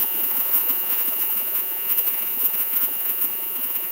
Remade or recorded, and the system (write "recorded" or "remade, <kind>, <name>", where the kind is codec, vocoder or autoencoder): remade, vocoder, Vocos